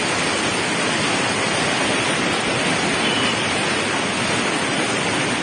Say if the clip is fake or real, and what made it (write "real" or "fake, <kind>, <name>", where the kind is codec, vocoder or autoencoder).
real